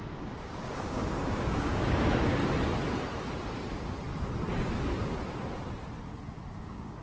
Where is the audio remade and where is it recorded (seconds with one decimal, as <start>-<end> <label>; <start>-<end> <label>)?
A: 0.0-2.4 remade; 2.4-6.6 recorded; 6.6-7.0 remade